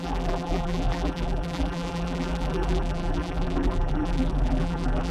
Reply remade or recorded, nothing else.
remade